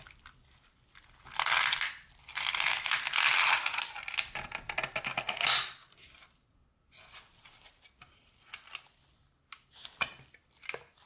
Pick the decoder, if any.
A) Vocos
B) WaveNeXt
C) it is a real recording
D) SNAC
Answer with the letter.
C